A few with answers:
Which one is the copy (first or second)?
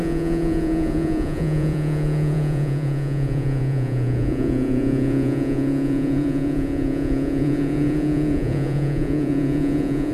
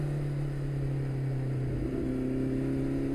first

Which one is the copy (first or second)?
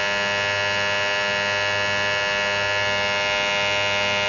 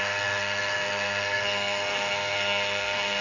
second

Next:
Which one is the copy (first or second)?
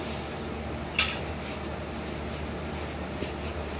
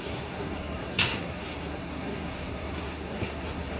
second